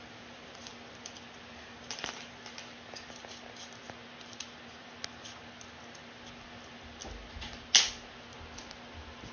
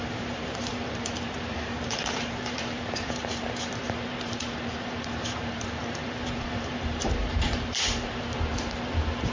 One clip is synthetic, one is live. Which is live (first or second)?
first